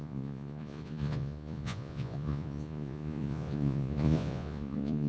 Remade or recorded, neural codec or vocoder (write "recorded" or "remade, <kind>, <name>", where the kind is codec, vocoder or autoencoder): remade, vocoder, Vocos